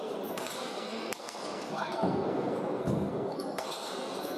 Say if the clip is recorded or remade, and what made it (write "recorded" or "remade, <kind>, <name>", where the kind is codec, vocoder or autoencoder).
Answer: remade, codec, SNAC